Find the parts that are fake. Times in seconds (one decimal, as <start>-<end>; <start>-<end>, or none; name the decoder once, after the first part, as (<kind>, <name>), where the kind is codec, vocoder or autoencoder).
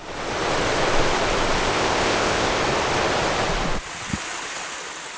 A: 1.7-2.6 (codec, ZipCodec)